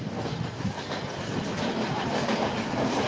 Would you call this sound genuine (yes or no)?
yes